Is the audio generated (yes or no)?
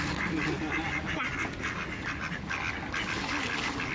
no